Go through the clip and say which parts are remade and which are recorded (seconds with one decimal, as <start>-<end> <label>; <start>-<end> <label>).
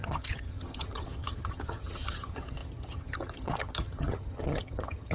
0.0-5.1 remade